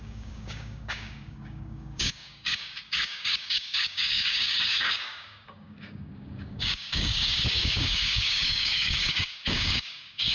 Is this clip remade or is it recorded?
remade